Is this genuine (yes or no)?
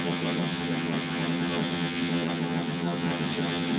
no